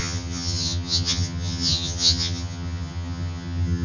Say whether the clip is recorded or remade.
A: remade